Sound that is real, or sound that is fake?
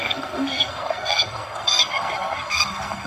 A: fake